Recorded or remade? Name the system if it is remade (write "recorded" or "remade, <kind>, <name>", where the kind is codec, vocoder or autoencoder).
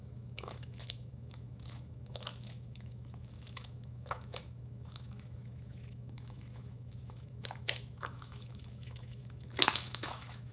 remade, autoencoder, DAC-VAE